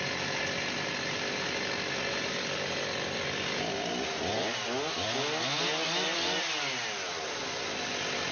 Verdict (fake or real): real